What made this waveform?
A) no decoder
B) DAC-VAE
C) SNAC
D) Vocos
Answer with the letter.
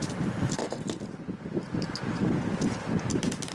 A